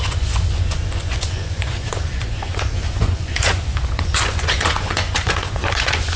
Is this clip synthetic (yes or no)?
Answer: yes